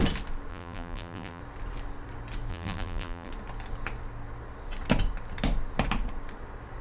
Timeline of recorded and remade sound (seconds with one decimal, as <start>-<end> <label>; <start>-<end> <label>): 0.0-0.5 recorded; 0.5-1.4 remade; 1.4-2.5 recorded; 2.5-3.3 remade; 3.3-6.8 recorded